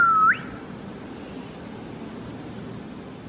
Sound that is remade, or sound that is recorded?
recorded